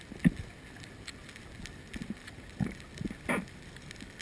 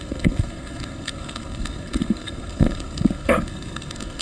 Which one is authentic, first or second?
first